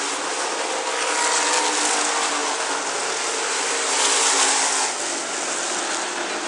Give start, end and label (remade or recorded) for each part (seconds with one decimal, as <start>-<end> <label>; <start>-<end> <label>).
0.0-6.5 recorded